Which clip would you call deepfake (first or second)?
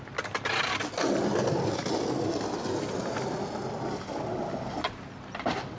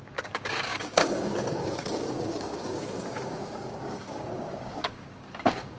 second